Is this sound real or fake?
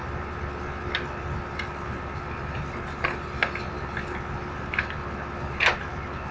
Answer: real